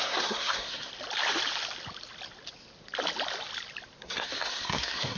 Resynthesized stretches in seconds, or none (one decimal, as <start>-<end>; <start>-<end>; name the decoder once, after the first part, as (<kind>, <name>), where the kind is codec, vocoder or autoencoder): 0.0-0.9 (codec, SNAC); 4.0-5.2